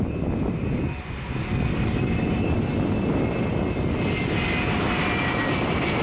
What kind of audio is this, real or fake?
real